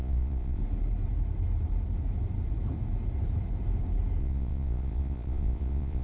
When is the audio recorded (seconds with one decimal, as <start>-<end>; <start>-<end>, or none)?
0.6-4.2